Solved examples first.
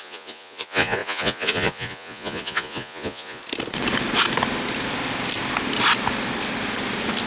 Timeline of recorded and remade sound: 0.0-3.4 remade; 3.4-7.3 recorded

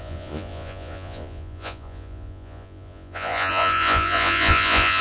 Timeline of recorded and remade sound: 0.0-5.0 remade

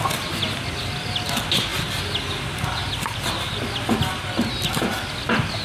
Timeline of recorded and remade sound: 0.0-5.6 recorded

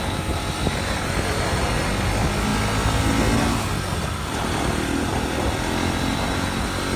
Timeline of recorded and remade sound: 0.0-7.0 recorded

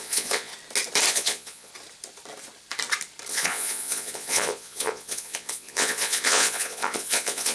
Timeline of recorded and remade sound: 0.0-0.5 remade; 0.5-1.1 recorded; 1.1-1.7 remade; 1.7-3.3 recorded; 3.3-7.5 remade

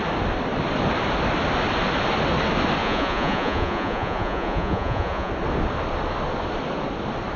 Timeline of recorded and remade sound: 0.0-2.8 recorded; 2.8-5.3 remade; 5.3-7.4 recorded